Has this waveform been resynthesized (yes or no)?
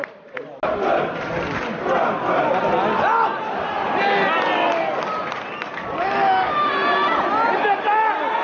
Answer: no